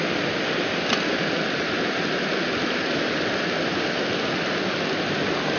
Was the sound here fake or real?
real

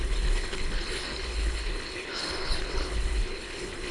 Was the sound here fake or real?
fake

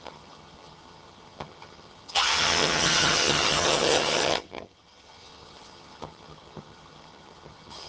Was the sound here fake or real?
fake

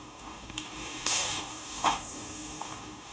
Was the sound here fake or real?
fake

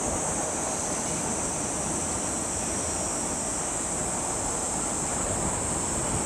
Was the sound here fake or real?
real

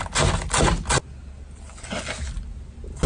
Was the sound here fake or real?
real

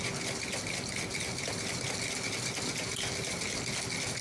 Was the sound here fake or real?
real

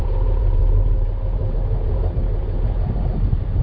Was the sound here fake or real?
fake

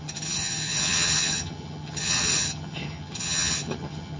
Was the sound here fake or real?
fake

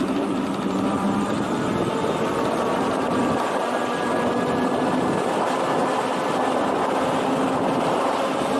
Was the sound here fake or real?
real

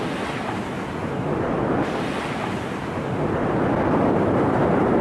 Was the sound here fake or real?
real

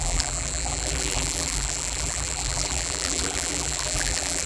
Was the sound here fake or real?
fake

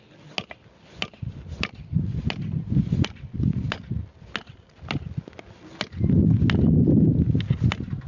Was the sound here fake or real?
real